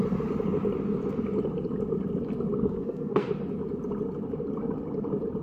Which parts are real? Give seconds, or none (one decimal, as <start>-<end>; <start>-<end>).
0.0-2.6; 3.3-5.4